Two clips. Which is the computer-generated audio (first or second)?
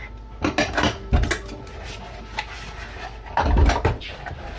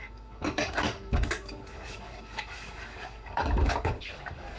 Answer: second